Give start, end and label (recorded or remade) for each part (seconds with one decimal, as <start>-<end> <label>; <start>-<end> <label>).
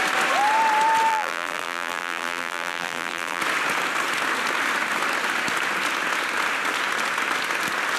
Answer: 0.0-1.1 recorded; 1.1-3.4 remade; 3.4-8.0 recorded